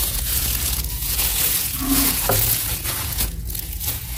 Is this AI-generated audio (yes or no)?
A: yes